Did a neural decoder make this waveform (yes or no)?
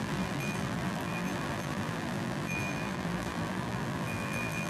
yes